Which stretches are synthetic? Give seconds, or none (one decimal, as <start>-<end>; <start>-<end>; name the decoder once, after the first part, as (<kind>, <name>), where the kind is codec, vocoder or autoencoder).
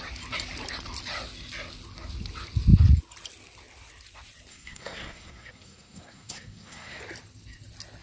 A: 4.5-7.0 (codec, SNAC)